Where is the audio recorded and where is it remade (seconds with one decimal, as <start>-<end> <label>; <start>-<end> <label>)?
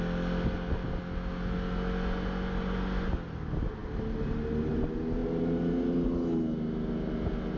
0.0-7.6 recorded